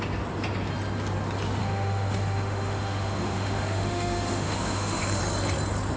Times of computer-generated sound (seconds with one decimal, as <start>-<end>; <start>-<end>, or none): 1.6-5.2